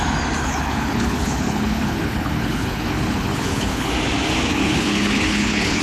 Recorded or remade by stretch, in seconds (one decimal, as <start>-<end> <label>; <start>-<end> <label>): 0.0-0.4 recorded; 0.4-3.9 remade; 3.9-4.5 recorded; 4.5-5.8 remade